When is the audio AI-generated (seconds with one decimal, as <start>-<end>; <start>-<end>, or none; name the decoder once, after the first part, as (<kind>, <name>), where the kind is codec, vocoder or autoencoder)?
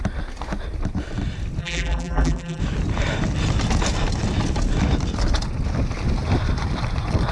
1.6-2.6 (vocoder, BigVGAN v2)